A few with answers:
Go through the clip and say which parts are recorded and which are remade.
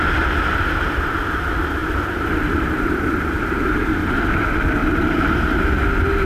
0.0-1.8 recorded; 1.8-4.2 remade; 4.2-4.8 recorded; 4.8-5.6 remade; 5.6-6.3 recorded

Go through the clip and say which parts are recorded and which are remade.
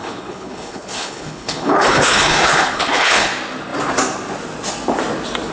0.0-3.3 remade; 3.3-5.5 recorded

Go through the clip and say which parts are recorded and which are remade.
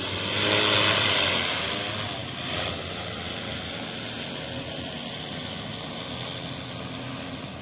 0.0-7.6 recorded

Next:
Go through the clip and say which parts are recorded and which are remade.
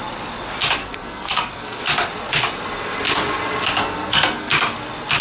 0.0-0.8 recorded; 0.8-1.8 remade; 1.8-3.8 recorded; 3.8-4.5 remade; 4.5-5.2 recorded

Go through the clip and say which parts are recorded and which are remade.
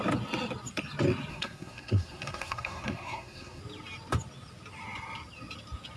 0.0-1.3 recorded; 1.3-3.6 remade; 3.6-6.0 recorded